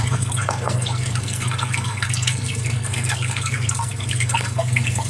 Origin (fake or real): fake